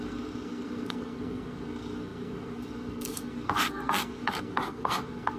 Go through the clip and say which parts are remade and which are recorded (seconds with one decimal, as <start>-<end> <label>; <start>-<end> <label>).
0.0-5.4 remade